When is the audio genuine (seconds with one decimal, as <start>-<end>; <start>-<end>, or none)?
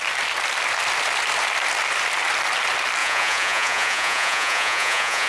0.0-3.0